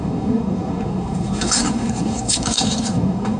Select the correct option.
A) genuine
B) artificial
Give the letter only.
B